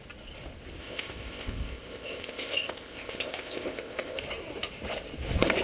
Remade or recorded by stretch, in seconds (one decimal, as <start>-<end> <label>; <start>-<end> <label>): 0.0-0.8 recorded; 0.8-4.2 remade; 4.2-5.6 recorded